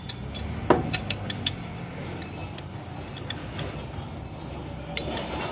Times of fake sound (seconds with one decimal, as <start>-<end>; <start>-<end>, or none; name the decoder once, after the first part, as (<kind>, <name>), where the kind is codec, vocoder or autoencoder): 4.6-5.5 (vocoder, BigVGAN v2)